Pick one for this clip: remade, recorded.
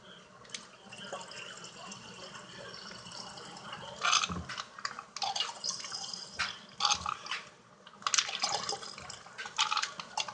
recorded